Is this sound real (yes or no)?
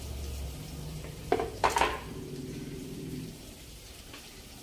no